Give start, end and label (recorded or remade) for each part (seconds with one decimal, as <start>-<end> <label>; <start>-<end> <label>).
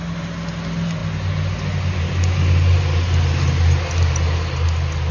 0.0-5.1 recorded